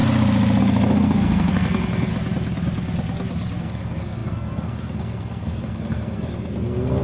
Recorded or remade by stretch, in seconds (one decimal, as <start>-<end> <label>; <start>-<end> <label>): 0.0-0.6 recorded; 0.6-2.1 remade; 2.1-3.6 recorded; 3.6-7.0 remade